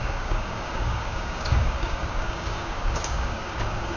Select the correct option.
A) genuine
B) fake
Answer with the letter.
B